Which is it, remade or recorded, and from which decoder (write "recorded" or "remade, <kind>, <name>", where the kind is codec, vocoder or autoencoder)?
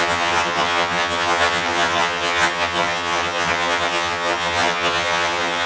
remade, vocoder, HiFi-GAN